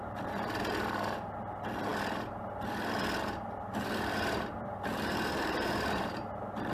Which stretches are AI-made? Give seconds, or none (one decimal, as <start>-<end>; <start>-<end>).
3.7-6.0